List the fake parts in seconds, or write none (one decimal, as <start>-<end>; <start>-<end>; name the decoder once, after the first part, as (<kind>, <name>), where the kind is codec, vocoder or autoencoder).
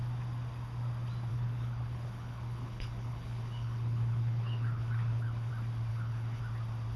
1.3-5.5 (codec, HILCodec); 5.9-6.4